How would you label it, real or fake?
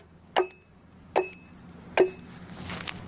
real